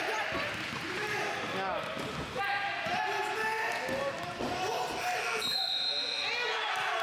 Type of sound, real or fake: real